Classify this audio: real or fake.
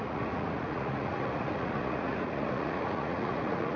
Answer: fake